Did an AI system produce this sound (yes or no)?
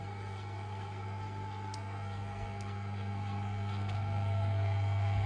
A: yes